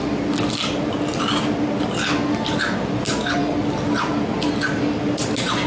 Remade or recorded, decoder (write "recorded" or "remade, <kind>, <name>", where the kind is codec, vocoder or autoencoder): recorded